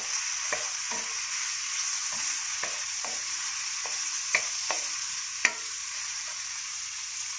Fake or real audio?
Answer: fake